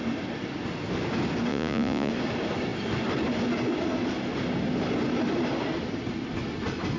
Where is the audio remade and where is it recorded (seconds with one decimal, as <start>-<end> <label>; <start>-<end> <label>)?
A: 0.0-1.5 recorded; 1.5-2.1 remade; 2.1-7.0 recorded